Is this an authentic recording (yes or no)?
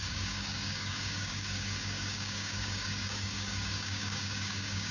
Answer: no